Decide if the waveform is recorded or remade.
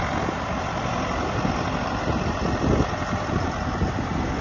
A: recorded